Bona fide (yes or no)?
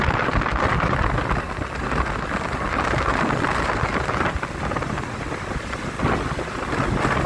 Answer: yes